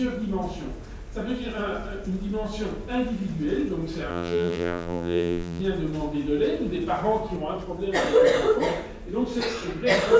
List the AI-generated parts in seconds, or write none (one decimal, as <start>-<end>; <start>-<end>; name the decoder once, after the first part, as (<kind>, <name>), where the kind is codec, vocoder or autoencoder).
4.1-5.6 (vocoder, BigVGAN v2)